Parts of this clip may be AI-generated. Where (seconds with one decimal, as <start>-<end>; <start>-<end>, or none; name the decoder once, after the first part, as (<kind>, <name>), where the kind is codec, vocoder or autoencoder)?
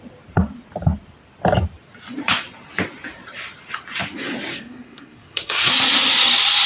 4.5-5.7 (codec, SNAC)